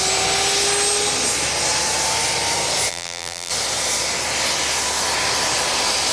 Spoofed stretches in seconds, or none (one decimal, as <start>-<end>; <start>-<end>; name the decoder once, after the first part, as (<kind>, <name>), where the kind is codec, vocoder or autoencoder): 2.9-3.5 (vocoder, BigVGAN v2)